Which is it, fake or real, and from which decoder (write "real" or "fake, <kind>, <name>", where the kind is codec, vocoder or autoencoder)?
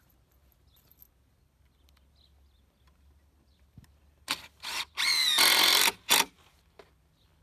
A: real